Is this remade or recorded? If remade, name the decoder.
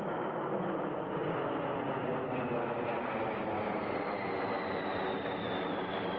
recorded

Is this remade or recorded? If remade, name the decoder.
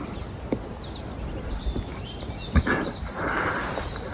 recorded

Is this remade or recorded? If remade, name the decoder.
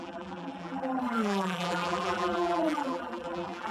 remade, vocoder, BigVGAN v2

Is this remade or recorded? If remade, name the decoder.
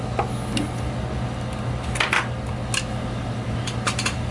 recorded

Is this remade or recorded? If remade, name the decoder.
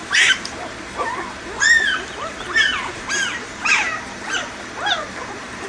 remade, vocoder, BigVGAN v2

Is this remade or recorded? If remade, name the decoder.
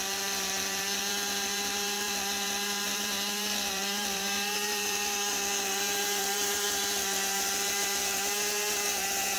remade, vocoder, BigVGAN v2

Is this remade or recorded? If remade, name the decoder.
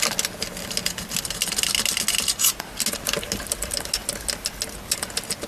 recorded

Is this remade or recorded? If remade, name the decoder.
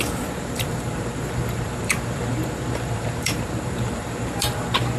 remade, vocoder, BigVGAN v2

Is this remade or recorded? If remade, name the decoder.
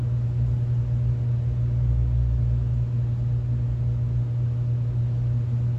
recorded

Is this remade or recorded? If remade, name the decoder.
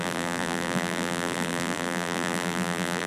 remade, vocoder, BigVGAN v2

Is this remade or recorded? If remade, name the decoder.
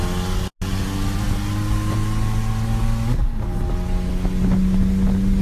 recorded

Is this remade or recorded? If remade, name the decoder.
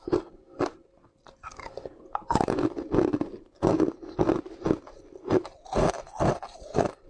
recorded